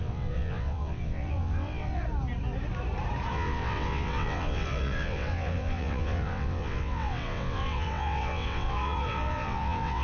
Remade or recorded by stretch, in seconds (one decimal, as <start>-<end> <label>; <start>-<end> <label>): 0.0-2.0 remade; 2.0-3.3 recorded; 3.3-10.0 remade